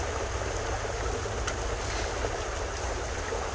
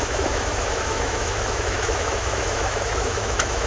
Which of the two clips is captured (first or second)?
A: first